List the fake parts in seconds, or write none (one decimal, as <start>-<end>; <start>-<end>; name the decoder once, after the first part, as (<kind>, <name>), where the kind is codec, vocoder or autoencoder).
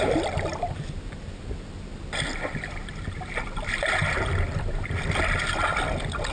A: none